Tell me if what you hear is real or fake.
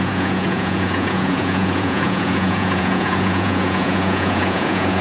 fake